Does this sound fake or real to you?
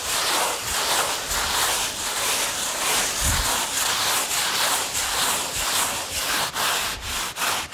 real